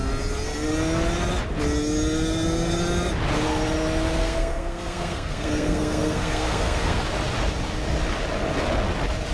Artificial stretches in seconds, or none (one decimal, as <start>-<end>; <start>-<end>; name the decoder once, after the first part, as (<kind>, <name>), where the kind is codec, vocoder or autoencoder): 4.2-7.0 (codec, SNAC)